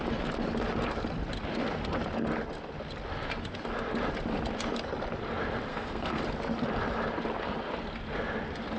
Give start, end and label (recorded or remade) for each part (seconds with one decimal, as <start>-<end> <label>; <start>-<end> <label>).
0.0-5.7 recorded; 5.7-6.2 remade; 6.2-8.8 recorded